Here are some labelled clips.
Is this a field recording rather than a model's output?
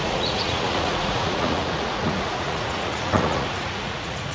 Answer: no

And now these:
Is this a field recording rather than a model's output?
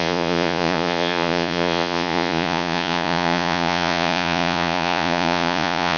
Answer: no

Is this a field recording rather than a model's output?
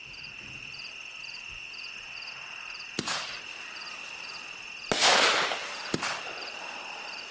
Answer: yes